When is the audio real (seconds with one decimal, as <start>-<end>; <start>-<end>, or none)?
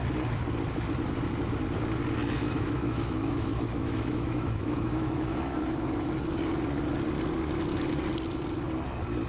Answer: 0.0-2.2; 6.1-9.3